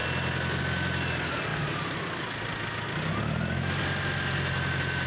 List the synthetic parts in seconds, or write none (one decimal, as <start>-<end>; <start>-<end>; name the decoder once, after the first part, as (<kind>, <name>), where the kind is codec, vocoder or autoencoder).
none